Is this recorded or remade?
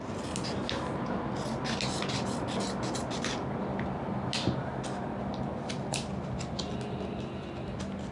recorded